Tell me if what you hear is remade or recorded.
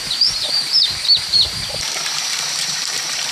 remade